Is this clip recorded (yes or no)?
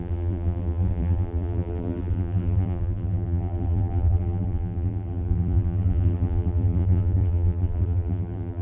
no